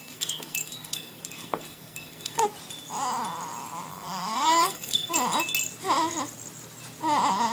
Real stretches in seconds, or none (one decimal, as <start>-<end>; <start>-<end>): 2.4-3.9; 5.1-7.5